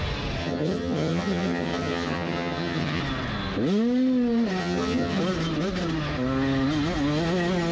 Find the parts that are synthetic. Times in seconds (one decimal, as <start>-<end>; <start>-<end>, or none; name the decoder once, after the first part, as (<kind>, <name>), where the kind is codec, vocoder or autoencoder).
0.4-3.0 (vocoder, HiFi-GAN); 4.6-5.2